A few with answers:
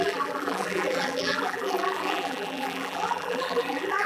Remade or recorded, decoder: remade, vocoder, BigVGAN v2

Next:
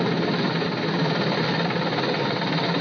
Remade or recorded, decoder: recorded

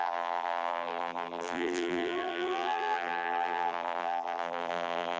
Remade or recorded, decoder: remade, vocoder, BigVGAN v2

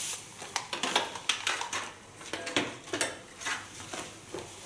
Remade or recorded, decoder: recorded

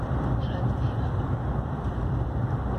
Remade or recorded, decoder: remade, vocoder, BigVGAN v2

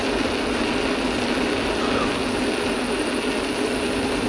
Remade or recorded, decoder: recorded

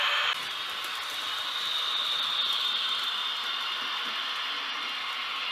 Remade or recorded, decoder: recorded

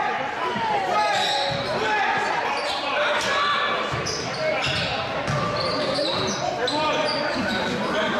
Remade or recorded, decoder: recorded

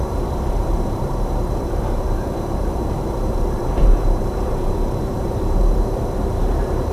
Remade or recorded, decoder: remade, vocoder, BigVGAN v2